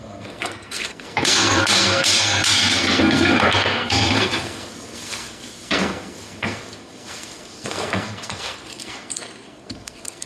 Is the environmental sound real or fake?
fake